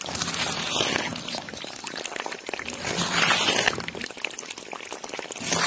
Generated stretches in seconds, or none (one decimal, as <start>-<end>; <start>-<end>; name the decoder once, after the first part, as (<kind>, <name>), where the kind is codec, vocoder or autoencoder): none